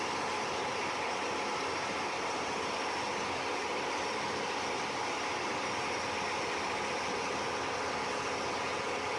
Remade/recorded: recorded